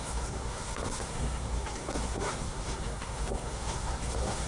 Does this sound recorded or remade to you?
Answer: remade